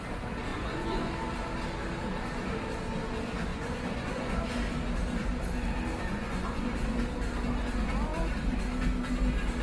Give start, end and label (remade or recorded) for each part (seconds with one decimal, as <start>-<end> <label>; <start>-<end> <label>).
0.0-0.5 recorded; 0.5-1.1 remade; 1.1-3.5 recorded; 3.5-4.4 remade; 4.4-6.1 recorded; 6.1-6.6 remade; 6.6-9.6 recorded